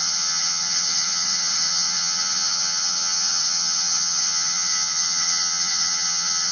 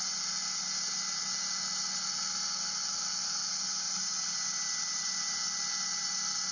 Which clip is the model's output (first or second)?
first